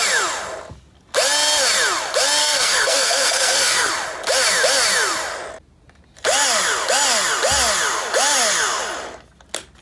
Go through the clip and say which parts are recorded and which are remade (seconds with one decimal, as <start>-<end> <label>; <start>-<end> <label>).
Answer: 0.0-2.4 recorded; 2.4-3.9 remade; 3.9-9.8 recorded